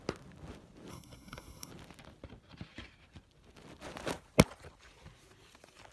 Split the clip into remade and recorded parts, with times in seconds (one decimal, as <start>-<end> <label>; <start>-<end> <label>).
0.0-0.9 recorded; 0.9-1.7 remade; 1.7-5.9 recorded